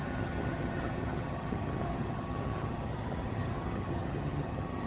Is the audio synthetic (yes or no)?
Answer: yes